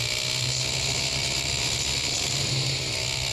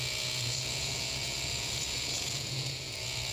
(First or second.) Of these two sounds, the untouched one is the first